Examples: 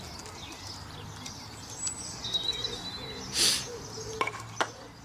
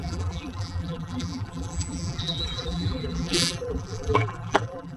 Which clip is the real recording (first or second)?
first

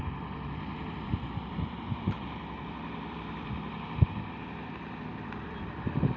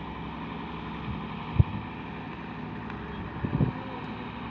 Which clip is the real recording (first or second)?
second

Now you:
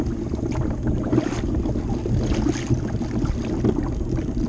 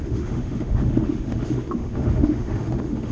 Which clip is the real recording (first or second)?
first